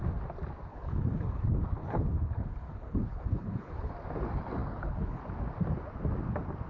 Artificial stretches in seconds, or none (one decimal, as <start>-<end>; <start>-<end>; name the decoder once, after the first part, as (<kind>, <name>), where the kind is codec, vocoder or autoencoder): 0.7-1.4 (codec, HILCodec); 1.8-3.9; 4.6-5.2